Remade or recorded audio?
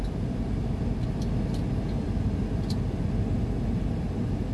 recorded